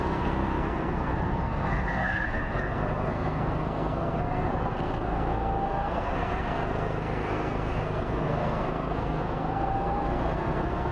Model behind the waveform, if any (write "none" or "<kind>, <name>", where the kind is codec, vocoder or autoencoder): codec, SNAC